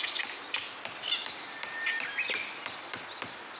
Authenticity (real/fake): real